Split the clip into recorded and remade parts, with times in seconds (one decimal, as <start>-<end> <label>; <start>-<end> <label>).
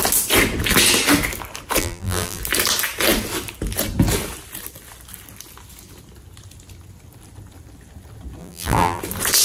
0.0-1.8 recorded; 1.8-2.4 remade; 2.4-8.4 recorded; 8.4-9.0 remade; 9.0-9.4 recorded